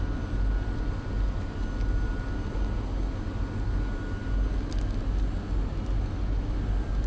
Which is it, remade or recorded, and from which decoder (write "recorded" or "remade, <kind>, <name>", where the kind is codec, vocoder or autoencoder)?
recorded